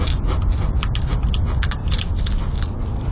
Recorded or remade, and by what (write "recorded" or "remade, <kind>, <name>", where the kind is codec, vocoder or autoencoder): recorded